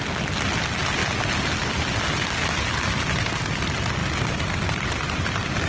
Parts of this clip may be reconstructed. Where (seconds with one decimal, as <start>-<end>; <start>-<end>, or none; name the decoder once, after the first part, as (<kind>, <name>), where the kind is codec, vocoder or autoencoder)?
none